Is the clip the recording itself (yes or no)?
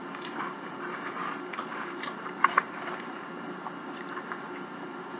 no